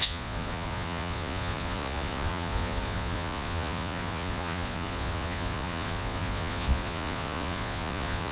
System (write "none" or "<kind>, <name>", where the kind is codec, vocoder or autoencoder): vocoder, Vocos